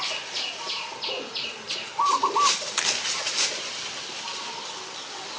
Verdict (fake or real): real